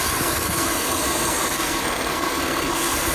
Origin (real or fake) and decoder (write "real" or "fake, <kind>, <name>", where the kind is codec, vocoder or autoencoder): fake, codec, SNAC